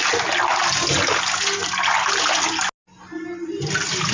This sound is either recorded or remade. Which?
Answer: recorded